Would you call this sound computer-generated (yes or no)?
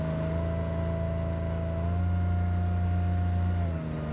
no